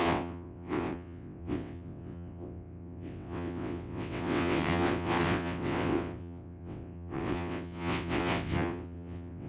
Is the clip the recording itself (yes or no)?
no